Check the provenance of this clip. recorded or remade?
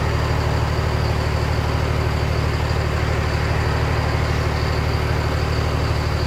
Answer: recorded